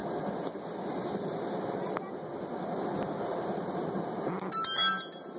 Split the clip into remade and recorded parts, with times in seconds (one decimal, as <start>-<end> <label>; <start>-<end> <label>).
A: 0.0-1.6 remade; 1.6-5.4 recorded